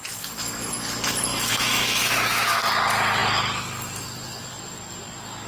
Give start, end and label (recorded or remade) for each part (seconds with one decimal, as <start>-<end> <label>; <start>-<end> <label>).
0.0-1.3 recorded; 1.3-2.6 remade; 2.6-5.5 recorded